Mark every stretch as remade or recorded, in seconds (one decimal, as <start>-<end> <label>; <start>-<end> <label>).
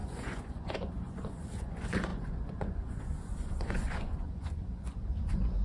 0.0-5.6 remade